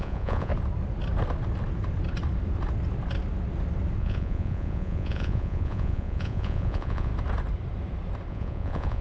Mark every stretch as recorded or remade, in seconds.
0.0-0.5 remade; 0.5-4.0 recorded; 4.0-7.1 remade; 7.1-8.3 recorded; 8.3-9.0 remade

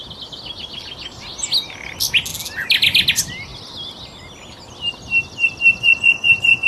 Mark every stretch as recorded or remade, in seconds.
0.0-5.7 recorded; 5.7-6.7 remade

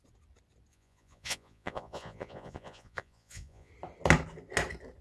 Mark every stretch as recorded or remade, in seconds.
0.0-0.7 recorded; 0.7-3.7 remade; 3.7-5.0 recorded

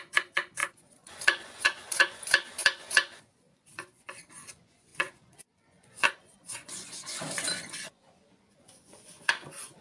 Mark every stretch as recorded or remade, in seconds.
0.0-9.8 remade

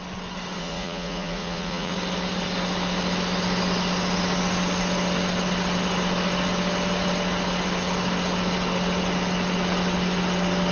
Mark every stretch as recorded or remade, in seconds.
0.0-0.6 recorded; 0.6-1.9 remade; 1.9-10.7 recorded

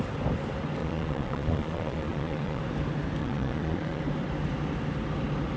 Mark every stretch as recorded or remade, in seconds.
0.0-0.8 recorded; 0.8-2.6 remade; 2.6-3.2 recorded; 3.2-4.0 remade; 4.0-5.6 recorded

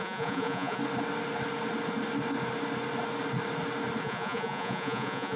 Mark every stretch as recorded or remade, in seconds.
0.0-0.8 remade; 0.8-4.0 recorded; 4.0-5.4 remade

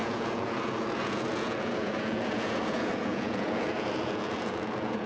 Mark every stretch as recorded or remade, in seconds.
0.0-5.1 remade